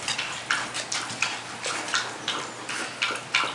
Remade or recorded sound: recorded